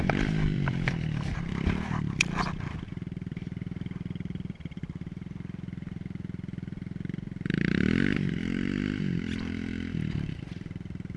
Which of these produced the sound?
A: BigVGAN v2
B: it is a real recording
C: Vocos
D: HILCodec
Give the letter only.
A